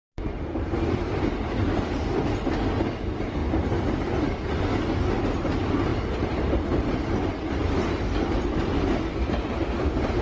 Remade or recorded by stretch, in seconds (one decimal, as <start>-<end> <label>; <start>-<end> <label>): 0.0-5.9 recorded; 5.9-10.2 remade